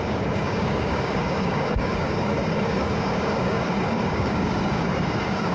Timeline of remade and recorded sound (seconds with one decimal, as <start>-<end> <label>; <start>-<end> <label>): 0.0-5.5 remade